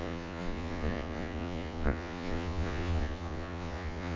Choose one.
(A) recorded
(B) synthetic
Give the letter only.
B